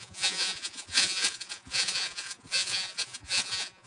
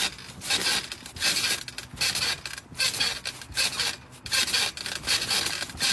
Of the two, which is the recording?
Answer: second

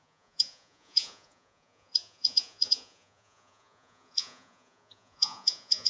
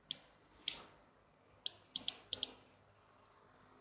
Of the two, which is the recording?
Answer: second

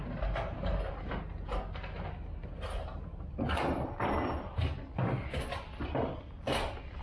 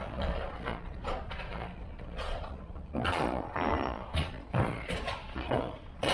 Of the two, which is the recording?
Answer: first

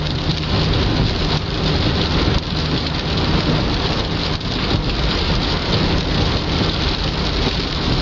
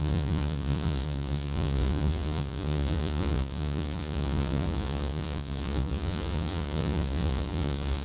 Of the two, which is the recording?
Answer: first